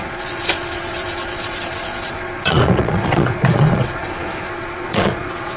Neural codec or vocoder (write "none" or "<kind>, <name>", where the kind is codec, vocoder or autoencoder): vocoder, Vocos